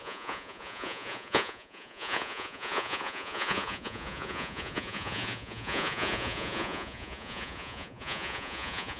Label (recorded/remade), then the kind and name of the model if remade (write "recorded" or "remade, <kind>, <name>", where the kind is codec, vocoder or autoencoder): remade, vocoder, Vocos